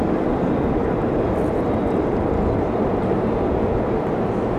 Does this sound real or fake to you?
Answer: real